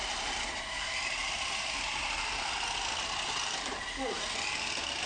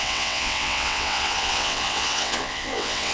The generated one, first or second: second